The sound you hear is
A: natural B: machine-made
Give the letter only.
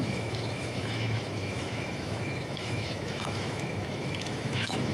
B